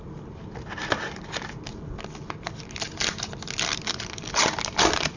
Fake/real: real